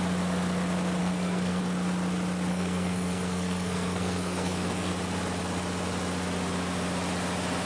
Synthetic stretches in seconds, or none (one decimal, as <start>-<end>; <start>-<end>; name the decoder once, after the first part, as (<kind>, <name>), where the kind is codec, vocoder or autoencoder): 1.0-1.6 (codec, SNAC); 2.5-4.9